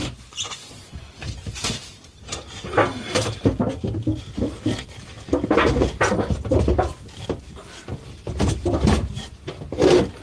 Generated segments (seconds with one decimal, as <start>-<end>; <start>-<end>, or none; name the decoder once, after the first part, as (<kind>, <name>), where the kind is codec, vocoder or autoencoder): 0.0-1.1 (vocoder, Vocos)